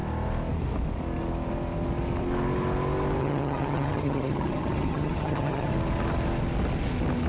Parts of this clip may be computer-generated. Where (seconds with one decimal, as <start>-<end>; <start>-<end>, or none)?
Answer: 3.2-5.7